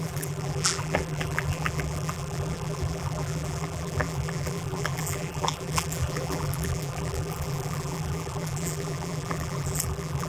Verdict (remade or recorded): remade